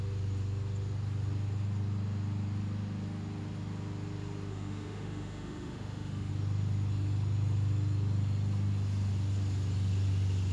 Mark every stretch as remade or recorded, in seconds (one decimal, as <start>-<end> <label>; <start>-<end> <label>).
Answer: 0.0-4.5 recorded; 4.5-6.3 remade; 6.3-10.5 recorded